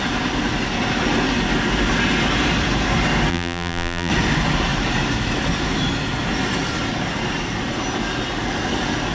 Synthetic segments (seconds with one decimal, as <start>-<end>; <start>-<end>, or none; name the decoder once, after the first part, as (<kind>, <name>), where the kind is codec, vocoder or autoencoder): 3.3-4.1 (vocoder, BigVGAN v2)